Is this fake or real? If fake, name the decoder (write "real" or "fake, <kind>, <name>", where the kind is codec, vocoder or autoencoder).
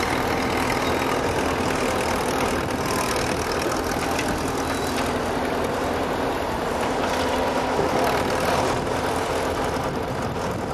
real